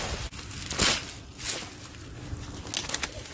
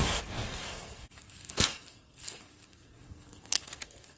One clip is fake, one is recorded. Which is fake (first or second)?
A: second